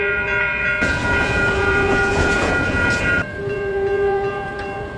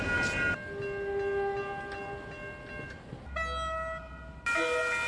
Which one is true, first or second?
second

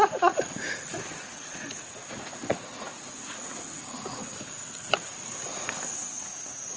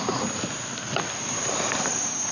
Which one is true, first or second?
second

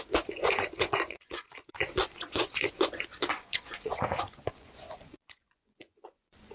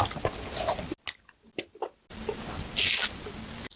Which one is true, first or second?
second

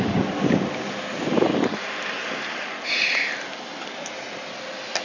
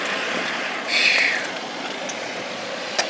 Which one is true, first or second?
first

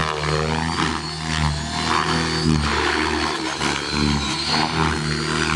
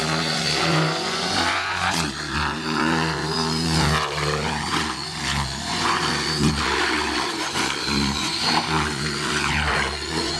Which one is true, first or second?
first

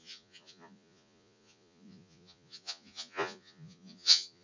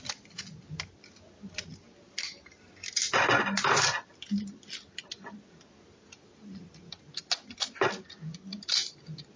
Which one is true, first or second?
second